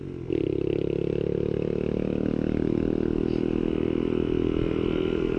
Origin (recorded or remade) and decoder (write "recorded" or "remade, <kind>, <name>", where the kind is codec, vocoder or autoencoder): recorded